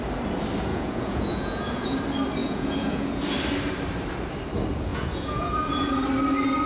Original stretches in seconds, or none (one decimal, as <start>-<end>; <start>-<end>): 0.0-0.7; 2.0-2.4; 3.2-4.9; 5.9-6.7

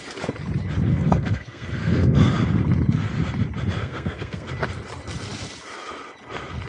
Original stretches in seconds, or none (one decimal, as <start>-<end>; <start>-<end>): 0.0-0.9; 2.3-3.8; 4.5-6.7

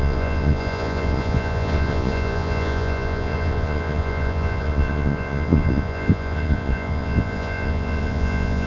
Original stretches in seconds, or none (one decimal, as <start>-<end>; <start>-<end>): none

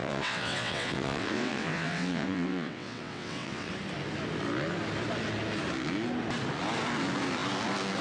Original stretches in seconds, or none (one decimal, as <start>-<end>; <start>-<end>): 3.7-8.0